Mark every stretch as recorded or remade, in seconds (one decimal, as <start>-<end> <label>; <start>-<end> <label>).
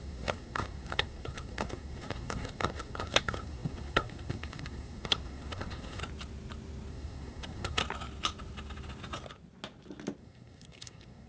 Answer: 0.0-6.0 remade; 6.0-6.9 recorded; 6.9-7.8 remade; 7.8-10.2 recorded; 10.2-11.3 remade